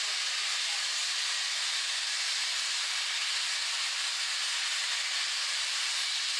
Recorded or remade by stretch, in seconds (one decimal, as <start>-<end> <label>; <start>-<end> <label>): 0.0-6.4 recorded